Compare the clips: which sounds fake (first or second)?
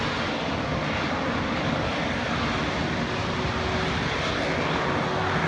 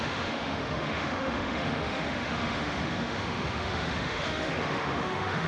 second